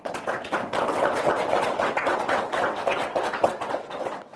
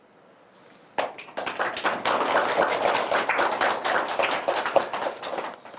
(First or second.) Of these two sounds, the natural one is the second